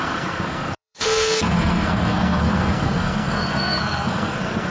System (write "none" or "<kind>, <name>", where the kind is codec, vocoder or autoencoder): codec, SNAC